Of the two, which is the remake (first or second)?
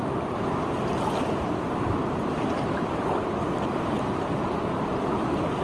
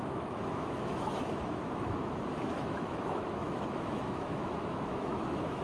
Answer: second